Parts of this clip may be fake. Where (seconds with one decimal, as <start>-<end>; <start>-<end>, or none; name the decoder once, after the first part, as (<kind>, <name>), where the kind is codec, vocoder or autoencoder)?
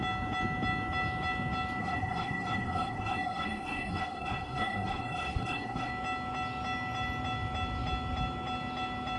1.8-5.9 (codec, SNAC)